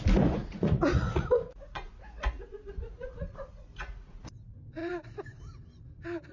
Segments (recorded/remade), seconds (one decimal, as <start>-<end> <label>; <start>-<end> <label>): 0.0-0.4 recorded; 0.4-4.2 remade; 4.2-6.3 recorded